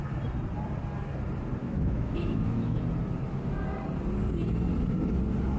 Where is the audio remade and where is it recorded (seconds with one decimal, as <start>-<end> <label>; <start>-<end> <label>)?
0.0-1.6 recorded; 1.6-2.8 remade; 2.8-5.6 recorded